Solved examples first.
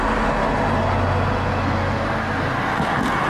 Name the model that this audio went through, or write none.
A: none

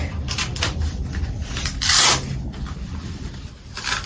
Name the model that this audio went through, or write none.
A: vocoder, BigVGAN v2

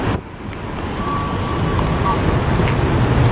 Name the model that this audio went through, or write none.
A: none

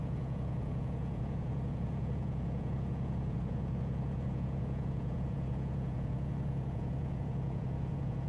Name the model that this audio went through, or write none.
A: vocoder, Vocos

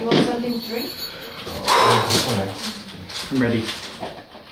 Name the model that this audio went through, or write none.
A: vocoder, BigVGAN v2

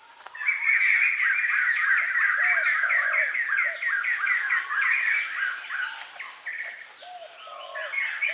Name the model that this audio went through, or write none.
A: none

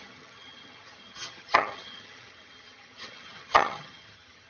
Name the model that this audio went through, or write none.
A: vocoder, HiFi-GAN